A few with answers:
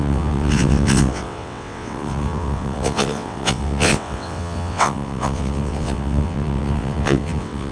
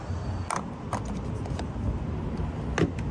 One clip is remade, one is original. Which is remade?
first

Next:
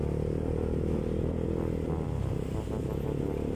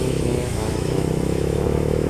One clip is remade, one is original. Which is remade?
second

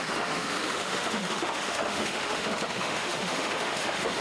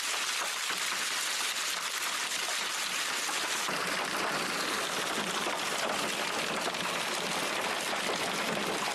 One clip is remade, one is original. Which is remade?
first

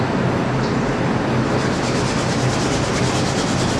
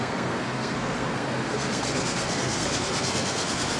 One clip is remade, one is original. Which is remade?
second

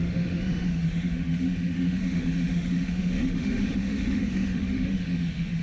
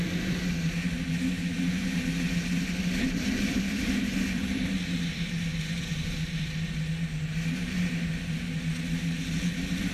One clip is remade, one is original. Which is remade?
first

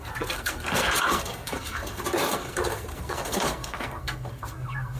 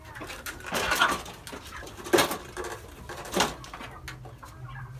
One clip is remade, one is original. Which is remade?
first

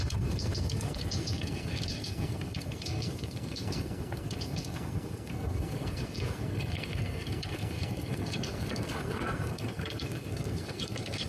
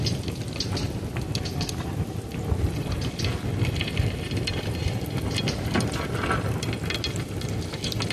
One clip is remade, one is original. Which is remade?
first